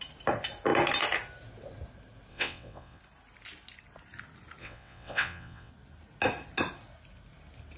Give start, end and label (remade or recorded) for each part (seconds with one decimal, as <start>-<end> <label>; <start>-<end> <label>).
0.0-2.3 recorded; 2.3-3.0 remade; 3.0-4.6 recorded; 4.6-5.7 remade; 5.7-7.8 recorded